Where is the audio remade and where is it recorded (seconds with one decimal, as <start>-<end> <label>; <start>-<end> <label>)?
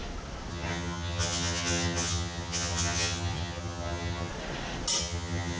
0.0-0.5 recorded; 0.5-4.3 remade; 4.3-5.0 recorded; 5.0-5.6 remade